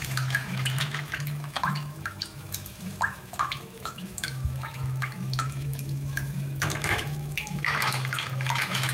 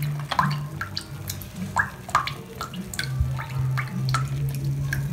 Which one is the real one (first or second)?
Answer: second